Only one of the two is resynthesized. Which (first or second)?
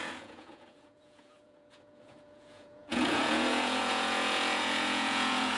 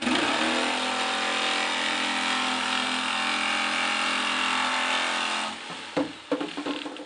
first